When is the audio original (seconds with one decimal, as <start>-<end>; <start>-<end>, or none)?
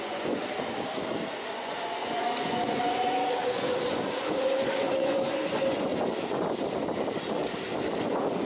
0.4-1.5; 5.9-8.0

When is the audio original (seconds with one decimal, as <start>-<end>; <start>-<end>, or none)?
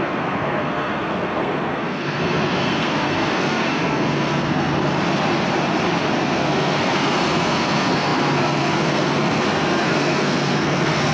4.8-6.2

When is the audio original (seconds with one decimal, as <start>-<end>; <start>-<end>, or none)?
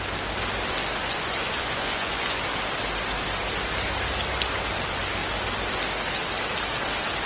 0.0-1.0; 2.4-7.3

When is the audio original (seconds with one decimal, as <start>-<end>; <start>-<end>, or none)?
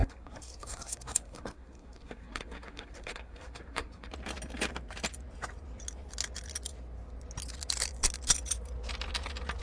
4.1-9.6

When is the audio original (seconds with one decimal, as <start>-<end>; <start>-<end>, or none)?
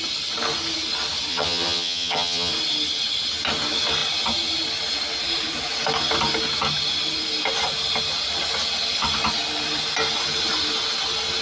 0.0-1.3; 2.5-11.4